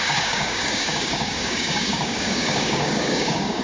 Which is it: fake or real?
fake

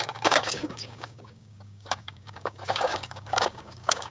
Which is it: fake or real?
fake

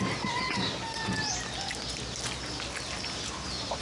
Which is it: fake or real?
real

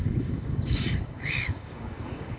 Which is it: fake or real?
fake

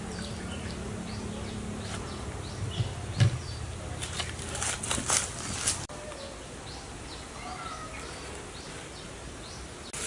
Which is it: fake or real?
real